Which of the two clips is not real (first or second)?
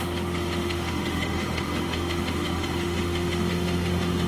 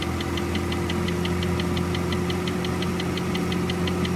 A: first